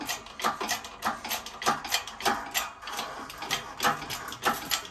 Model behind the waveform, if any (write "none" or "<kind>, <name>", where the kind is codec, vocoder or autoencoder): none